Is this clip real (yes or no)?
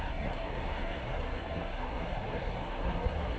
no